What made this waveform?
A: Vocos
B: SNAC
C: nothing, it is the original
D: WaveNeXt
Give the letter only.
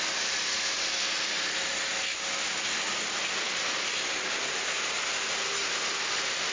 C